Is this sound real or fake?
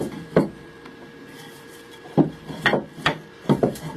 fake